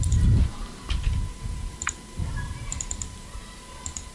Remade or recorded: remade